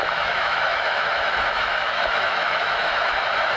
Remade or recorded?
remade